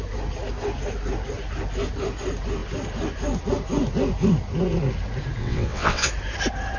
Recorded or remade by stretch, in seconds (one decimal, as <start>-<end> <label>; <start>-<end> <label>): 0.0-5.4 recorded; 5.4-6.1 remade; 6.1-6.8 recorded